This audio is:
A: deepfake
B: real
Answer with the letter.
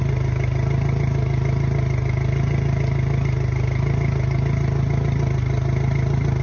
B